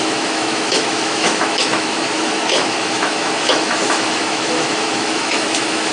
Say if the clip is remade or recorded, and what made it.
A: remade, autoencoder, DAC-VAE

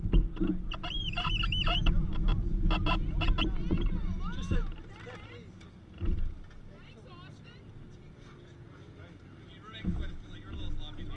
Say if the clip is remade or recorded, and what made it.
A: recorded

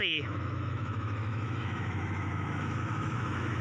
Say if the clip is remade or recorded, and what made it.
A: remade, autoencoder, DAC-VAE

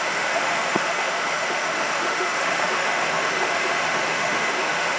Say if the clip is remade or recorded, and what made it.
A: remade, autoencoder, DAC-VAE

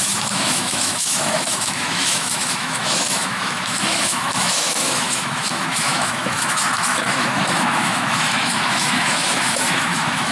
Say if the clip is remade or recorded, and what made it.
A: remade, autoencoder, DAC-VAE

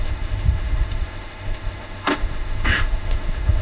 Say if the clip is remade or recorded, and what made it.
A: remade, autoencoder, DAC-VAE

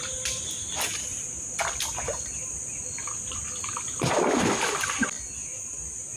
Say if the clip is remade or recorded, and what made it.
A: recorded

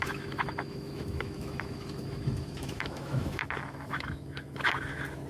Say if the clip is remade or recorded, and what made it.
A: remade, autoencoder, DAC-VAE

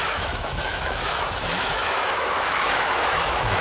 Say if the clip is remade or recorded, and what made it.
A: remade, autoencoder, DAC-VAE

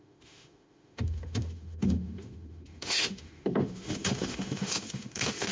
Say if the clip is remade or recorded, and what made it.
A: remade, autoencoder, DAC-VAE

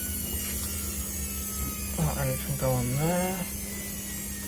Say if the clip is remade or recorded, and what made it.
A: recorded